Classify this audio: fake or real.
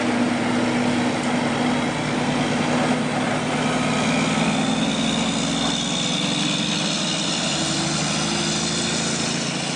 real